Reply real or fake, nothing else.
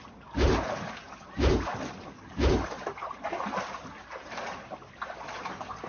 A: real